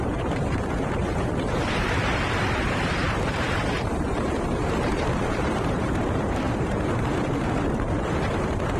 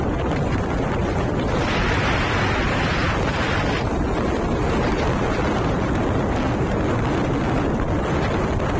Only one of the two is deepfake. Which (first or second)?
first